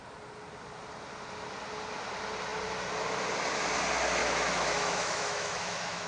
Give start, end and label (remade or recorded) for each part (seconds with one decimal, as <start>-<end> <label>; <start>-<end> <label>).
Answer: 0.0-4.2 recorded; 4.2-6.1 remade

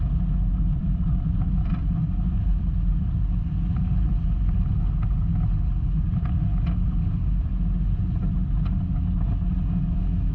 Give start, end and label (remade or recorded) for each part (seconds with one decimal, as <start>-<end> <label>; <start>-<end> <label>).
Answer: 0.0-0.8 recorded; 0.8-4.7 remade; 4.7-10.3 recorded

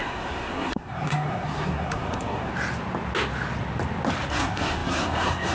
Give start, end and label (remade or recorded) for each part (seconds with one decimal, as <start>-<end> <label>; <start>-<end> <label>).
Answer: 0.0-2.5 remade; 2.5-4.3 recorded; 4.3-5.5 remade